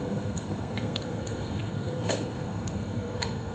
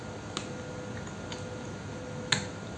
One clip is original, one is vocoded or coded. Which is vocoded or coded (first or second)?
first